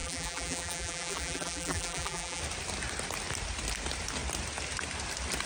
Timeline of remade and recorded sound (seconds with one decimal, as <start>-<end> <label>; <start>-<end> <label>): 0.0-2.4 remade; 2.4-5.5 recorded